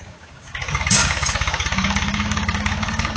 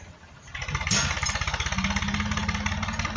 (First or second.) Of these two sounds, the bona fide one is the second